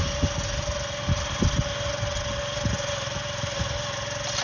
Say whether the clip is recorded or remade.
recorded